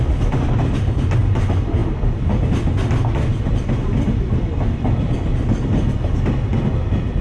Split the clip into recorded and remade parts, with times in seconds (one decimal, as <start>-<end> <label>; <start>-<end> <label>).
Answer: 0.0-7.2 recorded